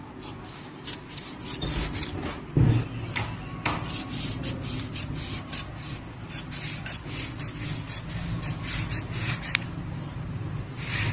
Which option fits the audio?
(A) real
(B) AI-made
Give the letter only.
A